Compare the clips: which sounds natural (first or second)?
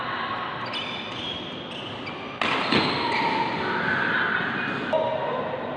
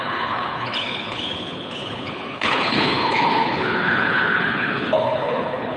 first